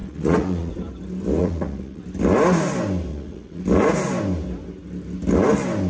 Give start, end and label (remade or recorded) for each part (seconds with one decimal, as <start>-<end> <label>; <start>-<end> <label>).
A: 0.0-0.7 remade; 0.7-1.4 recorded; 1.4-2.0 remade; 2.0-3.1 recorded; 3.1-3.6 remade; 3.6-5.9 recorded